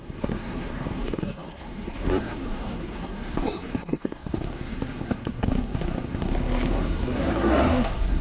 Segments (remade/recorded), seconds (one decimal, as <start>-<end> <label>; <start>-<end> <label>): 0.0-8.2 remade